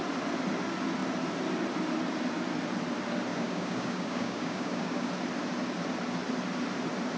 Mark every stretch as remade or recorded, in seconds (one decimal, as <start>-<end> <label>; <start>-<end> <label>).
0.0-3.3 recorded; 3.3-5.1 remade; 5.1-7.2 recorded